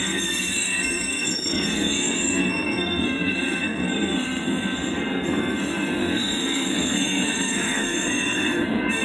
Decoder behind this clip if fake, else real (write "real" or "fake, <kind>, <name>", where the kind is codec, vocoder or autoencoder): fake, codec, SNAC